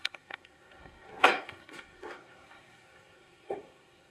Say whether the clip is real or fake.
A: fake